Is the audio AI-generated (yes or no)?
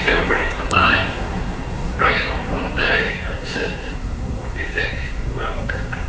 yes